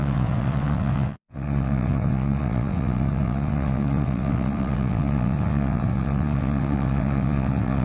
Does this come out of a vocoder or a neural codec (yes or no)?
yes